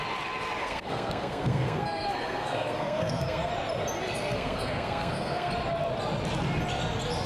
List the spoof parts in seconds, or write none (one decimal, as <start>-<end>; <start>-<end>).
0.6-3.5; 4.0-5.5